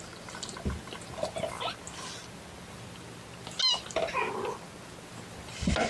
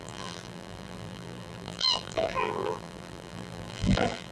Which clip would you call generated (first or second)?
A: second